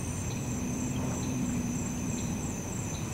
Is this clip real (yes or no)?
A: no